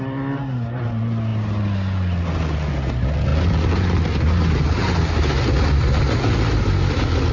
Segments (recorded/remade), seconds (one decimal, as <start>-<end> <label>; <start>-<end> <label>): 0.0-7.3 recorded